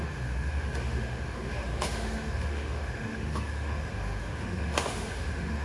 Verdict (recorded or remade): remade